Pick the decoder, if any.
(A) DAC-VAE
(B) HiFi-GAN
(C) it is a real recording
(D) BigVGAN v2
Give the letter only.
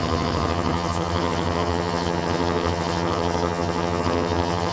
B